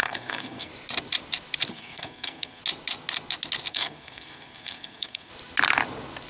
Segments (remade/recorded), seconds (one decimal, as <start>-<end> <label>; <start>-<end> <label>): 0.0-0.7 remade; 0.7-1.7 recorded; 1.7-2.6 remade; 2.6-3.7 recorded; 3.7-5.3 remade; 5.3-6.3 recorded